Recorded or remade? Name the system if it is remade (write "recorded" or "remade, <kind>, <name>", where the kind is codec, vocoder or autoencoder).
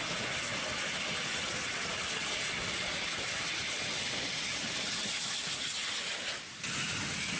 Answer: recorded